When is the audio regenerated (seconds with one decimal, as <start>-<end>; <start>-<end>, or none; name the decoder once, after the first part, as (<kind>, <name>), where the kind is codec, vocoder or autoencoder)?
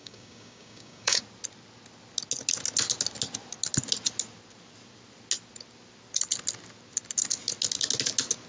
0.0-1.2 (codec, DAC)